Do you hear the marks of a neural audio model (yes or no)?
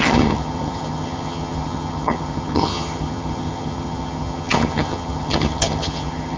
yes